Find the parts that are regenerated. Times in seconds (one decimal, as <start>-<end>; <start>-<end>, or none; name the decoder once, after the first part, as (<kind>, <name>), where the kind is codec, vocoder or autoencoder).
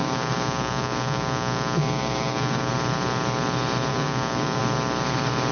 0.0-2.7 (codec, DAC); 3.9-4.6